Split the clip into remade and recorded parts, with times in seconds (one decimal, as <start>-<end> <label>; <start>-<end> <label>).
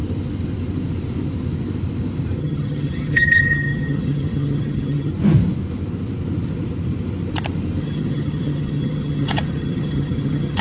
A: 0.0-2.4 recorded; 2.4-5.1 remade; 5.1-7.8 recorded; 7.8-10.6 remade